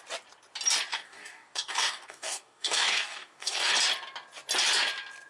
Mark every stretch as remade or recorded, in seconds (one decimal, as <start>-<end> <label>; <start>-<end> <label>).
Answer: 0.0-0.9 recorded; 0.9-3.7 remade; 3.7-5.3 recorded

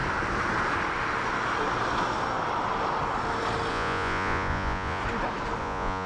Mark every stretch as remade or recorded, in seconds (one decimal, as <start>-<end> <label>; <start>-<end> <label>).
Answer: 0.0-3.7 recorded; 3.7-5.0 remade; 5.0-5.6 recorded; 5.6-6.1 remade

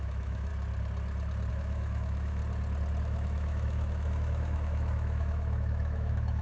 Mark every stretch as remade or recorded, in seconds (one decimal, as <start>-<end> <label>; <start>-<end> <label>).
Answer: 0.0-0.5 remade; 0.5-1.5 recorded; 1.5-2.4 remade; 2.4-3.0 recorded; 3.0-6.4 remade

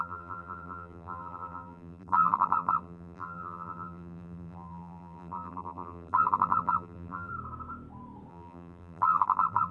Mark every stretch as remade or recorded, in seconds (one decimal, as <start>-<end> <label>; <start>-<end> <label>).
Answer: 0.0-7.3 remade; 7.3-8.3 recorded; 8.3-9.7 remade

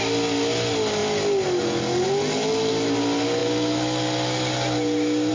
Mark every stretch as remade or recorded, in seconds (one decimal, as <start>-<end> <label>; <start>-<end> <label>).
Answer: 0.0-5.3 recorded

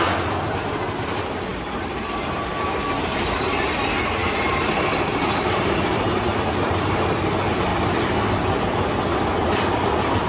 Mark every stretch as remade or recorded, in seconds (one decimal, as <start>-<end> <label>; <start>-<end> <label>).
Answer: 0.0-4.2 recorded; 4.2-7.3 remade; 7.3-10.3 recorded